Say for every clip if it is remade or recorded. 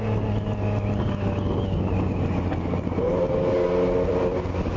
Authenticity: recorded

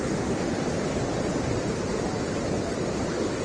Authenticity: recorded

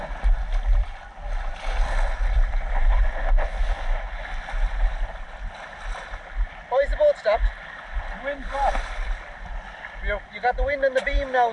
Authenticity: recorded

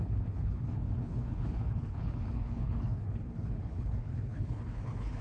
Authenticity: remade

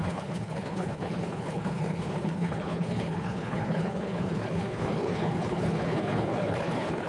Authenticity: remade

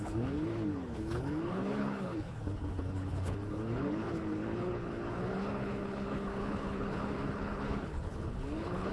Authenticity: remade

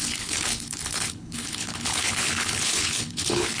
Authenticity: remade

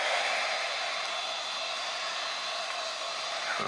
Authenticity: recorded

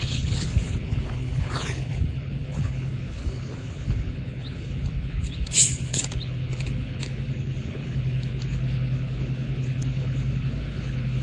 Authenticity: remade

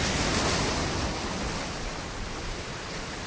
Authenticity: recorded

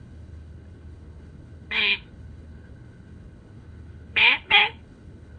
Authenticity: remade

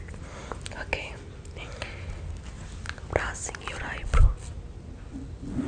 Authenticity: recorded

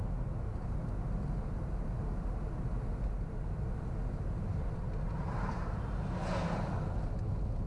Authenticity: recorded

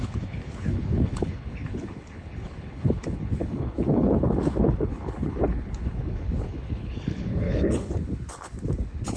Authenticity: remade